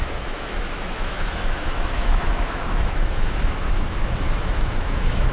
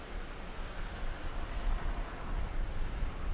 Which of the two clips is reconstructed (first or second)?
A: first